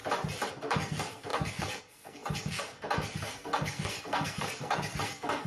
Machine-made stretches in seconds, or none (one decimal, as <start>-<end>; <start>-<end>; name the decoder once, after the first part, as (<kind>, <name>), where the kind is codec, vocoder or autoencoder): 0.5-5.5 (codec, SNAC)